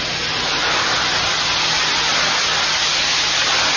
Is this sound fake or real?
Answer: real